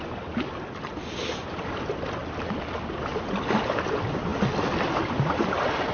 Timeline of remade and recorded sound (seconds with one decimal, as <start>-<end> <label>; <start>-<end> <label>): 0.0-5.9 recorded